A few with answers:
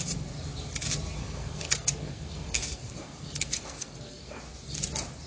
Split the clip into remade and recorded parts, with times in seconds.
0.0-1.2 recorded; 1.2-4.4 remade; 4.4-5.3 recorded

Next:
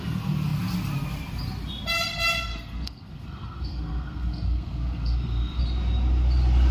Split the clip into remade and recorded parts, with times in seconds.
0.0-2.5 recorded; 2.5-5.6 remade; 5.6-6.7 recorded

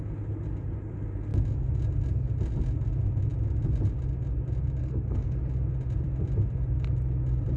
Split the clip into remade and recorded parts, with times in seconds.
0.0-4.8 recorded; 4.8-5.4 remade; 5.4-7.6 recorded

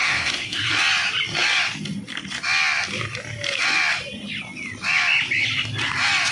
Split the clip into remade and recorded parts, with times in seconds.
0.0-0.7 remade; 0.7-6.3 recorded

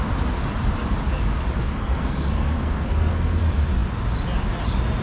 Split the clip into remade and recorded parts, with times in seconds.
0.0-1.6 recorded; 1.6-3.4 remade; 3.4-5.0 recorded

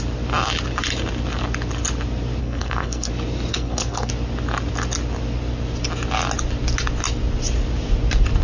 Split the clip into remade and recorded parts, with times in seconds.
0.0-2.4 recorded; 2.4-3.1 remade; 3.1-3.5 recorded; 3.5-4.1 remade; 4.1-8.4 recorded

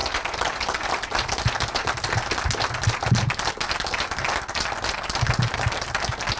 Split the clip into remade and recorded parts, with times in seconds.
0.0-6.4 recorded